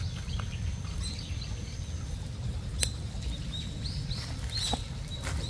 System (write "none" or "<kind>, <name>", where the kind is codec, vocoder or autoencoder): none